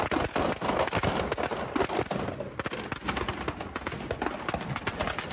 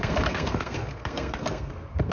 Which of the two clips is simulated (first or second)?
second